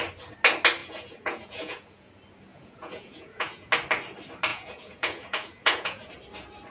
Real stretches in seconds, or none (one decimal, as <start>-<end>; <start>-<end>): 0.0-0.8; 2.1-2.5; 3.7-4.5; 6.1-6.7